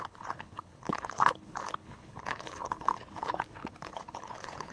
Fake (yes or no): yes